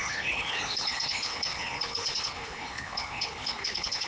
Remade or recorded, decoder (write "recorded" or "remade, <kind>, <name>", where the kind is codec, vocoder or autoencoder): remade, codec, HILCodec